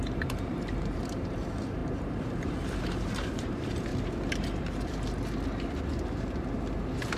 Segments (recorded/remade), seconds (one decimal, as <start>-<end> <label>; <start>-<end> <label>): 0.0-3.9 remade; 3.9-7.2 recorded